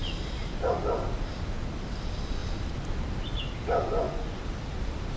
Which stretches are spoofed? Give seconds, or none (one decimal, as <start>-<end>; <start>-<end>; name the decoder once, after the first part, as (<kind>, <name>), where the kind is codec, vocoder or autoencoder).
3.8-4.4 (vocoder, Vocos)